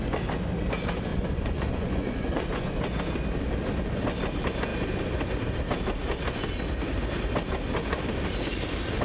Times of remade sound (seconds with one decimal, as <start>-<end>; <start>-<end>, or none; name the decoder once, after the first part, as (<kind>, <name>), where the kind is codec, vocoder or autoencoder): 1.1-2.8 (vocoder, Vocos)